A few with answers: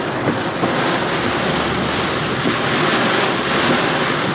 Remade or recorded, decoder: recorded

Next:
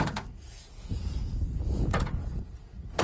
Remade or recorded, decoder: remade, vocoder, Vocos